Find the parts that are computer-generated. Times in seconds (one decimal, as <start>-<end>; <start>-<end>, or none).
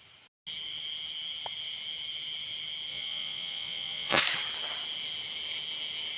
2.9-4.2